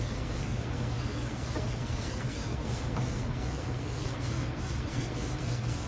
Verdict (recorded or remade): remade